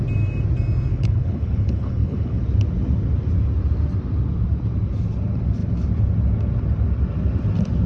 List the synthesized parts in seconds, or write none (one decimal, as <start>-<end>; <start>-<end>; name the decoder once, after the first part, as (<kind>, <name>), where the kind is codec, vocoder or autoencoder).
0.9-2.4 (codec, HILCodec)

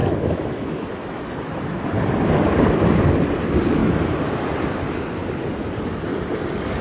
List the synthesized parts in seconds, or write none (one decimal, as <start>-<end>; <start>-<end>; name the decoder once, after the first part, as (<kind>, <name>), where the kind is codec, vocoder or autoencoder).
0.0-1.9 (autoencoder, DAC-VAE); 3.8-4.5